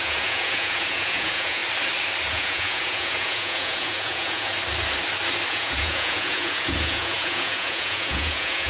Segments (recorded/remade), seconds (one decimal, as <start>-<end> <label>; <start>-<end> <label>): 0.0-1.6 remade; 1.6-2.3 recorded; 2.3-4.5 remade; 4.5-5.5 recorded; 5.5-8.7 remade